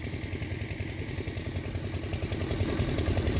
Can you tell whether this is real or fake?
real